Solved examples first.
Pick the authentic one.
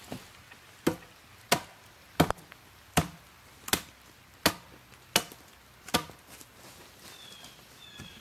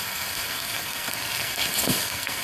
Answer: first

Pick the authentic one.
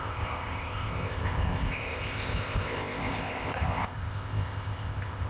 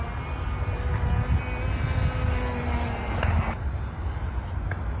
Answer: second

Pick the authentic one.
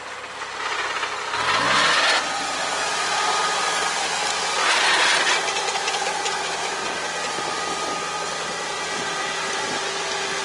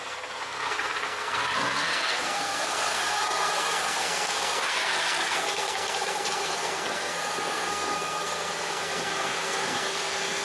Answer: first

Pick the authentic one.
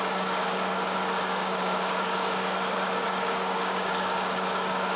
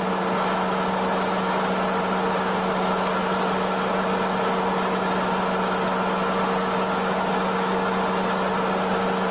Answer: second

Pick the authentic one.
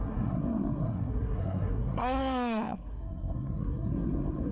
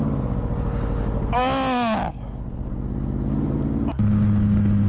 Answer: second